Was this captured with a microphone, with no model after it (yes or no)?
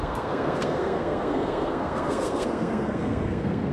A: no